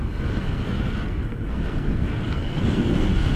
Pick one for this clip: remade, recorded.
remade